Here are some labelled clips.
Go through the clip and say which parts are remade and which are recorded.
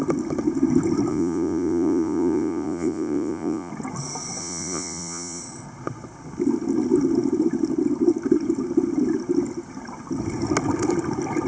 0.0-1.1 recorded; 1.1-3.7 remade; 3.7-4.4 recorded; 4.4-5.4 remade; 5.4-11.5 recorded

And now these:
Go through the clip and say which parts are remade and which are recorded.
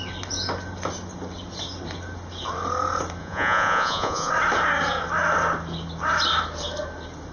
0.0-3.2 recorded; 3.2-4.3 remade; 4.3-7.3 recorded